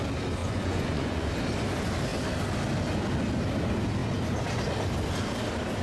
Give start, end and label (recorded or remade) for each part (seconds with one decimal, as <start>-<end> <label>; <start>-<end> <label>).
0.0-0.4 recorded; 0.4-1.3 remade; 1.3-5.8 recorded